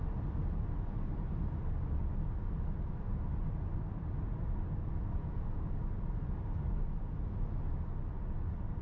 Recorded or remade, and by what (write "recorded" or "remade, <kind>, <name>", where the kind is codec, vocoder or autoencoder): recorded